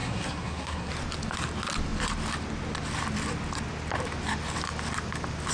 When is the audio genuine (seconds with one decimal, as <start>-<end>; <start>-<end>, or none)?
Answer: 0.9-5.5